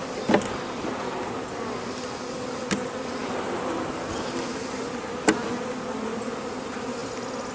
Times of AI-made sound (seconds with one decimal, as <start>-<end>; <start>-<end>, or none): none